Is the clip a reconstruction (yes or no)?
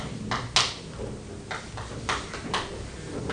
no